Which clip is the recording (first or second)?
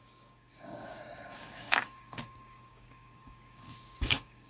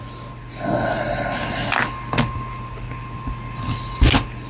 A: second